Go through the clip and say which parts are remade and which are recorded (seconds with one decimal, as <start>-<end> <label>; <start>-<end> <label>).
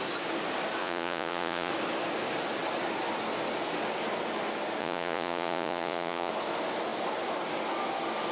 0.0-0.8 recorded; 0.8-1.7 remade; 1.7-4.8 recorded; 4.8-6.3 remade; 6.3-8.3 recorded